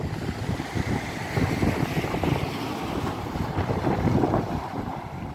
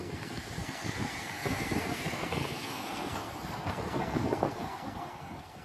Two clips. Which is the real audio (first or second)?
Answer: first